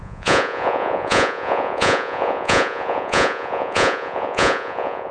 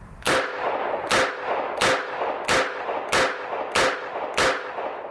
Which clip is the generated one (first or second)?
first